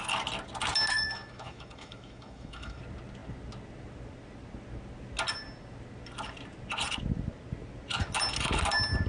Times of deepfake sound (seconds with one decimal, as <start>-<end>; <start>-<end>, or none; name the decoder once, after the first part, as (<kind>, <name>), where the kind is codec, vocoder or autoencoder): 0.9-2.8 (autoencoder, DAC-VAE)